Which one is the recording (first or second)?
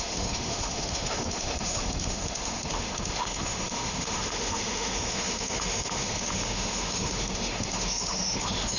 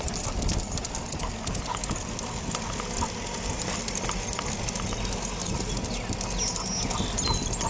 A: second